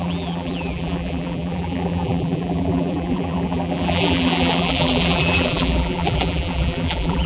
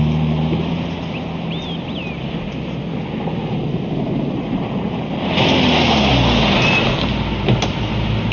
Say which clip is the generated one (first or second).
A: first